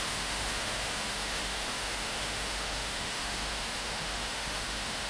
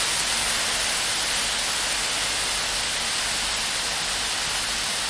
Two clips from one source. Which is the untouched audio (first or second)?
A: second